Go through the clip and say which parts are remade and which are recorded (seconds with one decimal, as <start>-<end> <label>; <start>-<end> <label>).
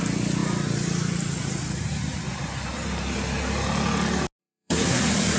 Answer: 0.0-4.4 recorded; 4.4-5.0 remade; 5.0-5.4 recorded